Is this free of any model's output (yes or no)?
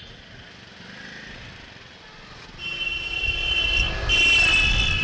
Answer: yes